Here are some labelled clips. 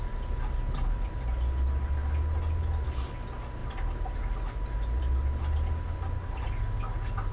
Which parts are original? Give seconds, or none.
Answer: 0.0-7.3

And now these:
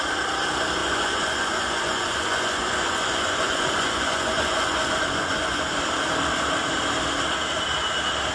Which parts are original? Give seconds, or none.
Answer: 0.0-0.8; 5.8-8.3

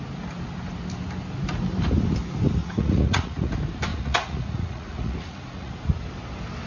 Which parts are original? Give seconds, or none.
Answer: 0.0-2.6; 3.5-3.9; 5.7-6.7

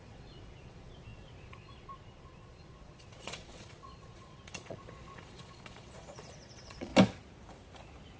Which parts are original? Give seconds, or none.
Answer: 6.9-8.2

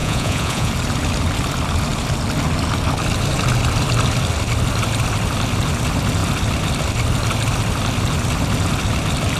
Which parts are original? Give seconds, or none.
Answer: 0.7-9.4

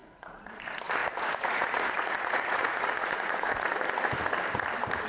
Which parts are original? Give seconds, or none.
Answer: 0.6-1.0; 3.7-5.1

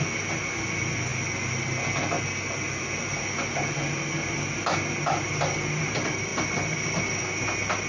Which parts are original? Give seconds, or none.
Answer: 0.0-7.9

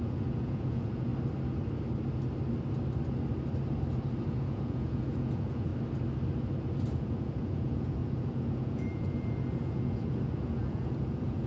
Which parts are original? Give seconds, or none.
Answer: 1.1-4.3; 5.7-6.9